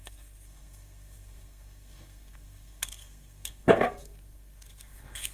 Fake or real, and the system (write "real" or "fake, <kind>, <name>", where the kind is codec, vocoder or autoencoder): fake, codec, SNAC